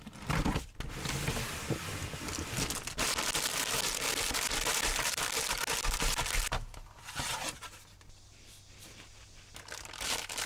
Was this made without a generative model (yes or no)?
yes